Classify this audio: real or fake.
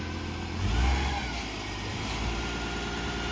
real